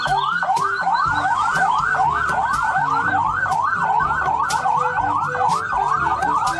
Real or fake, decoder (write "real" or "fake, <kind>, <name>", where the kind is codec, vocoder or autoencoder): real